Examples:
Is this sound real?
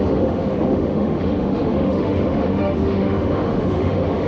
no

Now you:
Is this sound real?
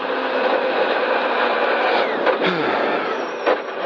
yes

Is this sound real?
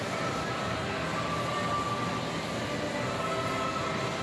yes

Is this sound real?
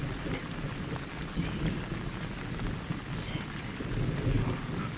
yes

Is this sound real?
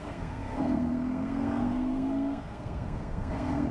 no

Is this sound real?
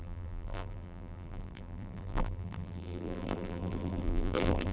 no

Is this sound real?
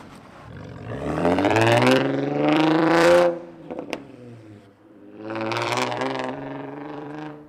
no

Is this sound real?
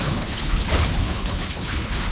no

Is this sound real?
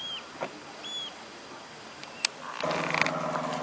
yes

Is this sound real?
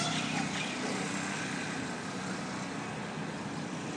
no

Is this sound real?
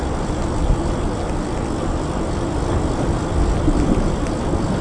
yes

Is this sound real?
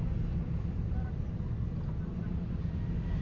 yes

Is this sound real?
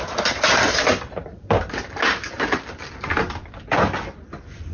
yes